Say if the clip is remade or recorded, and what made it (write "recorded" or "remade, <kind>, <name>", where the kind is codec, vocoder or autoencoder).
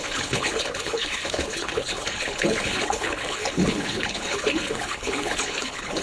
remade, codec, HILCodec